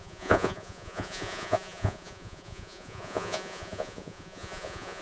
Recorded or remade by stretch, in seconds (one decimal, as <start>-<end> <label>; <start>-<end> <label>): 0.0-5.0 remade